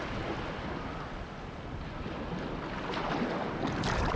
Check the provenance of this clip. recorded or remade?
recorded